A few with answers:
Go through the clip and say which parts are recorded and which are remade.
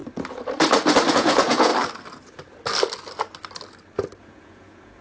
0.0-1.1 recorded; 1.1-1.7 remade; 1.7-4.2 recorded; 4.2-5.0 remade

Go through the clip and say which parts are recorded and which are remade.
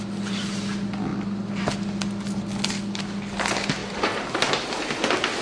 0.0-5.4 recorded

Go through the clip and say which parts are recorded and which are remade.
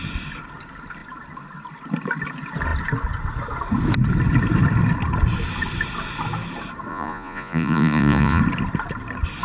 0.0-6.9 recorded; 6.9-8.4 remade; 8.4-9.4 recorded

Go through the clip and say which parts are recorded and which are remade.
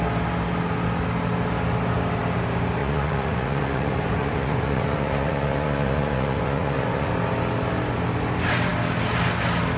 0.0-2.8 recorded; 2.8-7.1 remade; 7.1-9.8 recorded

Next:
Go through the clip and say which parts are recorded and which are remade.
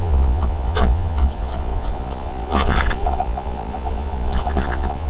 0.0-5.1 remade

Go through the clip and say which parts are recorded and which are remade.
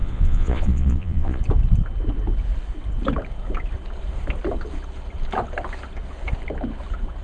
0.0-1.4 remade; 1.4-7.2 recorded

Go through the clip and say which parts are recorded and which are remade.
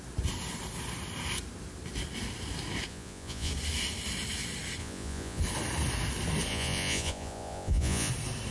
0.0-2.9 recorded; 2.9-3.5 remade; 3.5-4.8 recorded; 4.8-5.4 remade; 5.4-6.5 recorded; 6.5-8.1 remade; 8.1-8.5 recorded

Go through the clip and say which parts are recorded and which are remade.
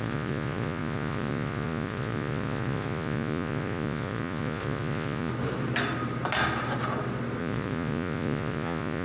0.0-5.3 remade; 5.3-7.4 recorded; 7.4-9.0 remade